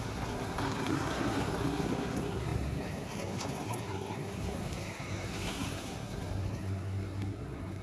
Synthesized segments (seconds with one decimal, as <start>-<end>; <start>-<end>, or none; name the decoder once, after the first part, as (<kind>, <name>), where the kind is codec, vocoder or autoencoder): 0.0-7.8 (codec, SNAC)

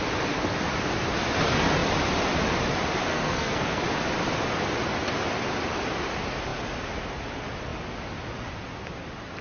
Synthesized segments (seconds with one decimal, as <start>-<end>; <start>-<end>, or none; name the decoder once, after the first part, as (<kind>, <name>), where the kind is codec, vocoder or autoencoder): 3.1-3.8 (codec, SNAC)

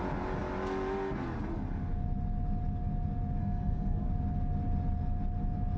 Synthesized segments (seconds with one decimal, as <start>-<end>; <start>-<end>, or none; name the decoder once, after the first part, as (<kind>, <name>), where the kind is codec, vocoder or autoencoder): 3.4-4.1 (codec, SNAC)

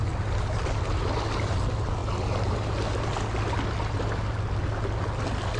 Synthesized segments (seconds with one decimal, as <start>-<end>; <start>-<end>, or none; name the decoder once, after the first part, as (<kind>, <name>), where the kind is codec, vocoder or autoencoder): none

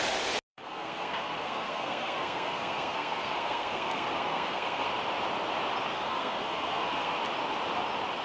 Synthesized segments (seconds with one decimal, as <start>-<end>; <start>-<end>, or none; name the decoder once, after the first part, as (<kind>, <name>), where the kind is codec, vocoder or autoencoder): 0.5-4.9 (codec, SNAC); 5.9-7.2

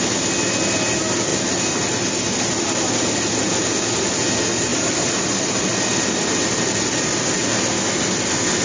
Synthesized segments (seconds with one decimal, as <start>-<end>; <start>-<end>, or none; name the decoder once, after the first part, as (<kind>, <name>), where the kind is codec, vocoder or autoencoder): none

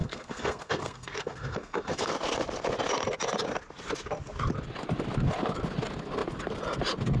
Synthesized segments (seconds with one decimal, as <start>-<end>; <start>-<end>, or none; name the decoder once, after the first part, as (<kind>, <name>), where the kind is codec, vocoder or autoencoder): 0.0-2.1 (codec, SNAC)

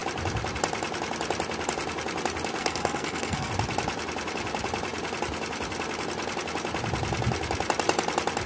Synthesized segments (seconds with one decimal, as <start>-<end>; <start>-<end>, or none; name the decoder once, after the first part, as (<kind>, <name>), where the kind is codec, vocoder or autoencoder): 2.6-3.5 (codec, SNAC)